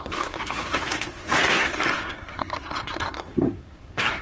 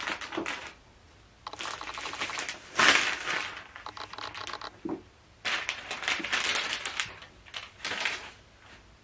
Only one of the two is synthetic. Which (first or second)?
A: first